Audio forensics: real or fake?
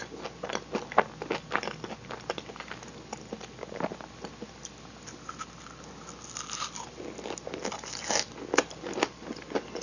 real